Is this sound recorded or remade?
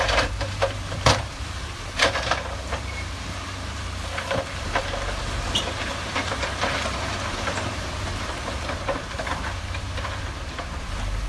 remade